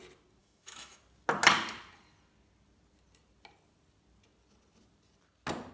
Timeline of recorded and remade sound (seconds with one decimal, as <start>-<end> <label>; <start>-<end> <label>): 0.0-0.4 recorded; 0.4-1.0 remade; 1.0-5.7 recorded